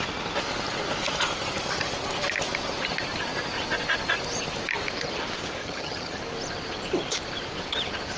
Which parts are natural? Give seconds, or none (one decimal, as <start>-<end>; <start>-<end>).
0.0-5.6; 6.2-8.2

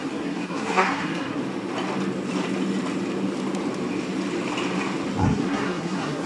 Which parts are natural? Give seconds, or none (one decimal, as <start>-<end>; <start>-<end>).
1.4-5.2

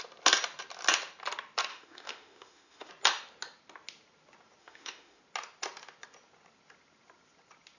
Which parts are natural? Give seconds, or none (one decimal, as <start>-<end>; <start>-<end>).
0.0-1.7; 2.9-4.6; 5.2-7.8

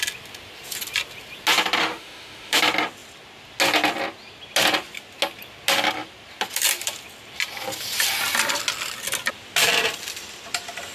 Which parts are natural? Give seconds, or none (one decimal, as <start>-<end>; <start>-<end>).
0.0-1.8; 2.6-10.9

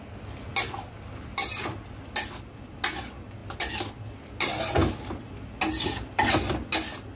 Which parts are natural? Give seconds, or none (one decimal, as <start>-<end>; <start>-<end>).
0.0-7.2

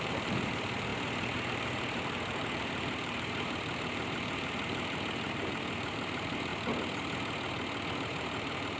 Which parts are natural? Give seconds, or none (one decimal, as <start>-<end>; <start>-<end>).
0.9-1.5; 6.5-7.9

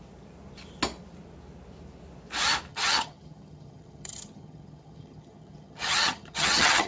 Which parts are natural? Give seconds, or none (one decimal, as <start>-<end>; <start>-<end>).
0.0-2.7

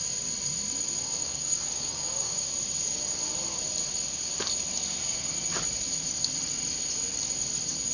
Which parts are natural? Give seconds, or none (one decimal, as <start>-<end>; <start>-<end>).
0.0-1.2; 2.5-7.9